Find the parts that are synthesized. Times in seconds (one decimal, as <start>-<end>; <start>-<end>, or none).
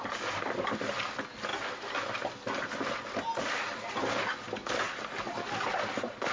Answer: none